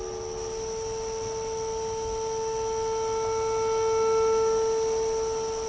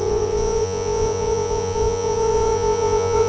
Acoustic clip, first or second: first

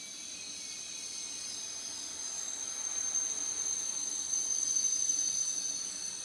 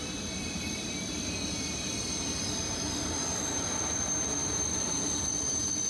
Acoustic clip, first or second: first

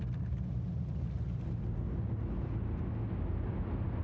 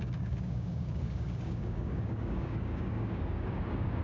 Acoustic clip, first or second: first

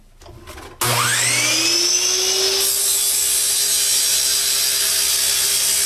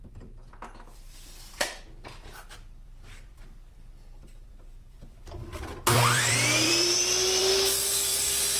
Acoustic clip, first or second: first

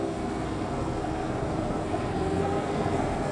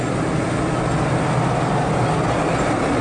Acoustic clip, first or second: second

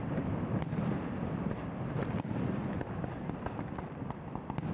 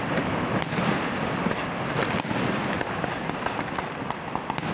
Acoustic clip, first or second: second